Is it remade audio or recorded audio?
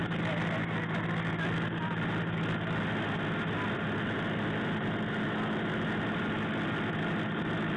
recorded